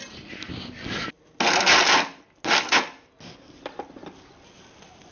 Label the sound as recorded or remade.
recorded